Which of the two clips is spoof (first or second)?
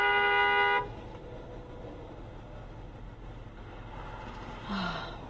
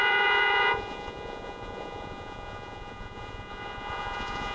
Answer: second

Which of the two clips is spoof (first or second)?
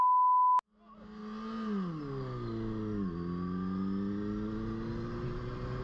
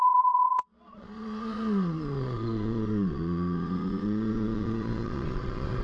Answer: second